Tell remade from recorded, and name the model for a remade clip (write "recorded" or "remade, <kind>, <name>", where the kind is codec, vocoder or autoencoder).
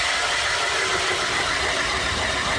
recorded